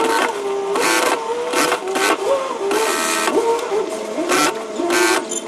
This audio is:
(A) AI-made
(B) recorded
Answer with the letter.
B